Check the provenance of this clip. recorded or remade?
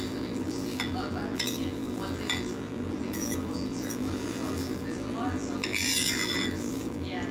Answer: remade